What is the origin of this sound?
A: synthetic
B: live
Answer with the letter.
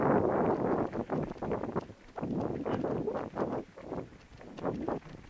B